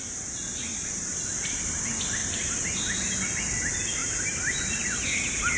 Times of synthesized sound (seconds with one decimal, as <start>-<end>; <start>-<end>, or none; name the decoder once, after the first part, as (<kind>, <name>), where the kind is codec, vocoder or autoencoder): 0.7-1.2 (vocoder, BigVGAN v2); 2.2-2.8; 4.0-4.6